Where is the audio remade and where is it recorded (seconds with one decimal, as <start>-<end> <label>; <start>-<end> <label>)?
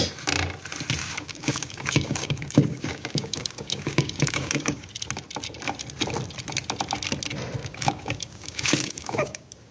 0.0-1.0 recorded; 1.0-4.9 remade; 4.9-7.6 recorded; 7.6-9.7 remade